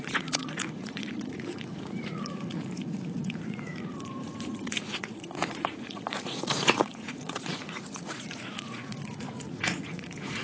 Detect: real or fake fake